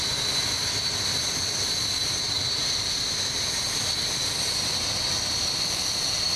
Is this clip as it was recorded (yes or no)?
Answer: no